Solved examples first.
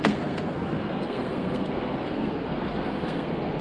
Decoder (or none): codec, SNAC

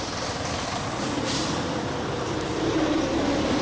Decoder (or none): none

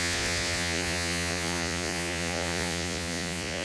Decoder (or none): vocoder, Vocos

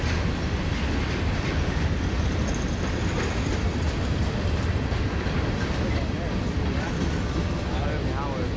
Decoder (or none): none